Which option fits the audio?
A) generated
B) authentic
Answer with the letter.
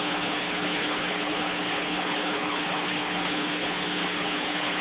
A